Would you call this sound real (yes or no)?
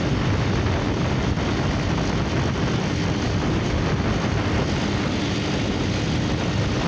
yes